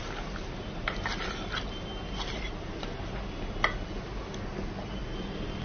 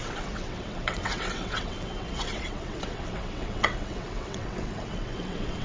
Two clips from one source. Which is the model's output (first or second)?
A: second